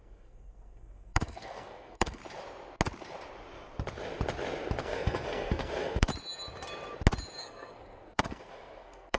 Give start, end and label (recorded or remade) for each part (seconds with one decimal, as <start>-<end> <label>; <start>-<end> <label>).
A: 0.0-2.2 remade; 2.2-4.8 recorded; 4.8-6.1 remade; 6.1-7.4 recorded; 7.4-9.2 remade